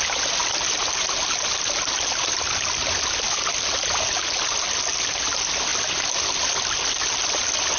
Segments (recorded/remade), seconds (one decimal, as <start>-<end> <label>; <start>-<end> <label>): 0.0-7.8 recorded